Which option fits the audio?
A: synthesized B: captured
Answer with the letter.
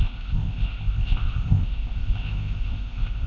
A